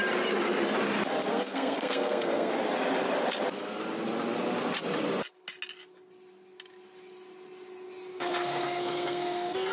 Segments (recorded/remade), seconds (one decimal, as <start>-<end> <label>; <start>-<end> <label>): 0.0-1.3 recorded; 1.3-2.5 remade; 2.5-8.1 recorded; 8.1-9.7 remade